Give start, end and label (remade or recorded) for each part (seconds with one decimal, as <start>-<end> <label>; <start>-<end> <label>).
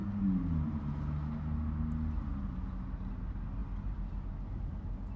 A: 0.0-5.2 recorded